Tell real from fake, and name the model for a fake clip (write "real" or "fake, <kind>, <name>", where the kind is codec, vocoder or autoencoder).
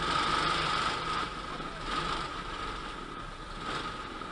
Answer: fake, vocoder, BigVGAN v2